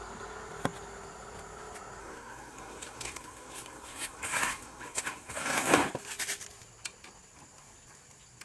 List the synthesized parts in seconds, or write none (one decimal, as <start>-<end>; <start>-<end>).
2.0-5.7